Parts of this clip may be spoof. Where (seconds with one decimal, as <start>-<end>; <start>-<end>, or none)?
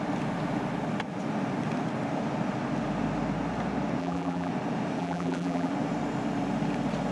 4.0-4.5; 5.0-5.7